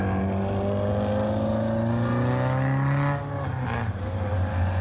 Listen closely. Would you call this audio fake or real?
real